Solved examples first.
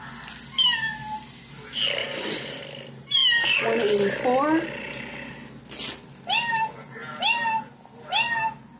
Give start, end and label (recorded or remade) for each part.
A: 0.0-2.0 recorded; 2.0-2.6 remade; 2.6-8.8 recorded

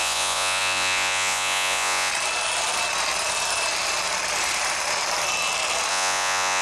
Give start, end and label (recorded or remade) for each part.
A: 0.0-2.1 remade; 2.1-5.9 recorded; 5.9-6.6 remade

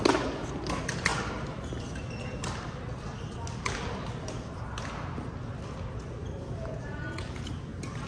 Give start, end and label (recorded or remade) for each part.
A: 0.0-6.6 recorded; 6.6-7.5 remade; 7.5-8.1 recorded

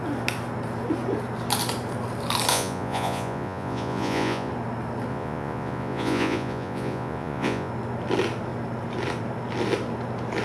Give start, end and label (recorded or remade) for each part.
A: 0.0-2.5 recorded; 2.5-4.5 remade; 4.5-5.1 recorded; 5.1-7.7 remade; 7.7-10.4 recorded

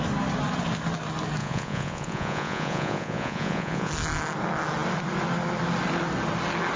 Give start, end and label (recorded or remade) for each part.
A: 0.0-1.4 recorded; 1.4-3.9 remade; 3.9-6.8 recorded

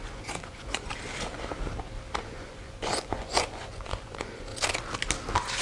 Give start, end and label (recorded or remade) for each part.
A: 0.0-0.9 remade; 0.9-2.2 recorded; 2.2-4.5 remade; 4.5-5.6 recorded